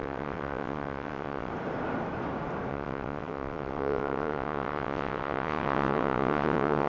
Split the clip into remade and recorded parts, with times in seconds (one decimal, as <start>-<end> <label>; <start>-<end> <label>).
0.0-1.5 remade; 1.5-2.7 recorded; 2.7-6.9 remade